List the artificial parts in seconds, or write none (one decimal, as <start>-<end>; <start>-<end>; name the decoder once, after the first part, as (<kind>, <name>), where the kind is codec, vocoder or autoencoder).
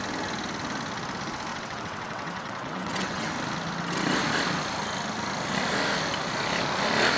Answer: 1.5-3.3 (vocoder, WaveNeXt)